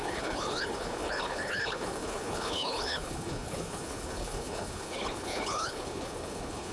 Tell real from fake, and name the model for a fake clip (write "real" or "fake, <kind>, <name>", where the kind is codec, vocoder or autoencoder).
fake, codec, HILCodec